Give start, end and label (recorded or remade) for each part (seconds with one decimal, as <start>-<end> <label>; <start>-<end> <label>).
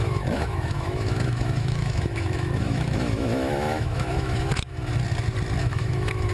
0.0-4.9 remade; 4.9-5.6 recorded; 5.6-6.3 remade